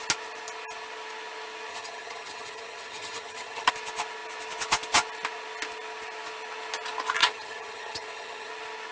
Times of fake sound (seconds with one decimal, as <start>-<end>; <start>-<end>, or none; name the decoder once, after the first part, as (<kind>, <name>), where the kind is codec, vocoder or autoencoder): 1.7-3.7 (vocoder, HiFi-GAN); 7.2-8.5